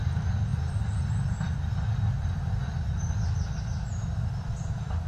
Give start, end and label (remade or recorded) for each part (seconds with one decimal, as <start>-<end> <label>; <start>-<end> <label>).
0.0-5.1 recorded